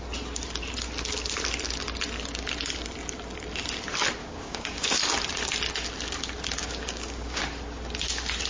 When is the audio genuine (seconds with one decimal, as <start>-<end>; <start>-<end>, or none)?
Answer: 0.0-4.2; 5.0-6.6; 7.4-8.5